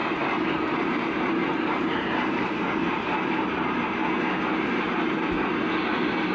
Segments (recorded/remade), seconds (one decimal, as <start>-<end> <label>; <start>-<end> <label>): 0.0-3.8 remade; 3.8-4.5 recorded; 4.5-5.5 remade; 5.5-6.3 recorded